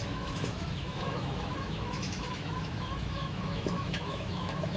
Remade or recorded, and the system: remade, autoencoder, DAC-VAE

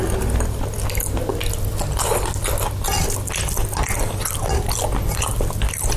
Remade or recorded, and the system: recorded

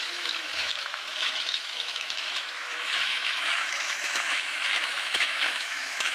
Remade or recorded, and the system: remade, autoencoder, DAC-VAE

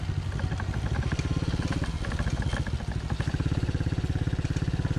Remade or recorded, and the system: recorded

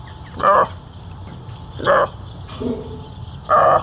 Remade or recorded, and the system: recorded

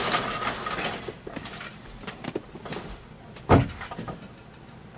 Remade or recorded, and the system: recorded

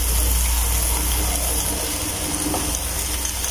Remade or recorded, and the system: recorded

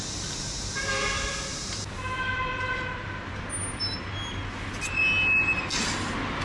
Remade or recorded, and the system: recorded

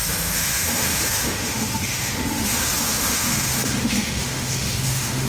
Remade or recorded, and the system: remade, autoencoder, DAC-VAE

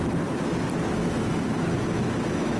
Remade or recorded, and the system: recorded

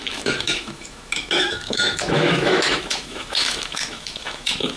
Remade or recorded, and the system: remade, autoencoder, DAC-VAE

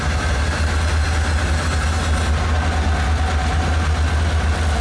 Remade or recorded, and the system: recorded